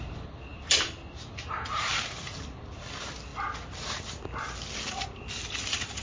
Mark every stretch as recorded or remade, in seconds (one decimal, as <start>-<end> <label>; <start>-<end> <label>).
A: 0.0-0.5 recorded; 0.5-2.6 remade; 2.6-6.0 recorded